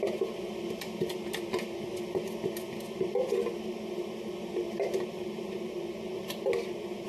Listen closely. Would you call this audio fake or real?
real